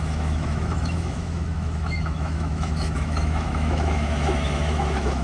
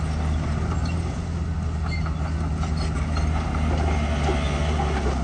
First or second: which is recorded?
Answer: second